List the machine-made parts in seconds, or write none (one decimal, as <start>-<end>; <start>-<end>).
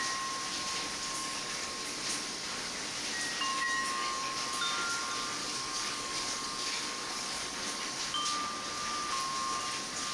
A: 1.2-1.7; 3.5-4.3; 5.4-8.0